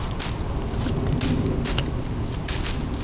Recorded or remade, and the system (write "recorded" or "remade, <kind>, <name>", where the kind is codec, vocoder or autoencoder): recorded